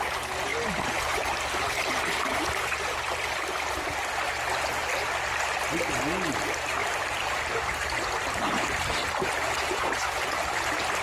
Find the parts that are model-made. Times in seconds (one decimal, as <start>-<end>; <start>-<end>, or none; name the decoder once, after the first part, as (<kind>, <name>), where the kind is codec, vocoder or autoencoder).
6.8-9.8 (vocoder, BigVGAN v2)